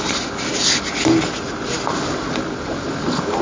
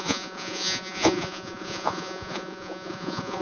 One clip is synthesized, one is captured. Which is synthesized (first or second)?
second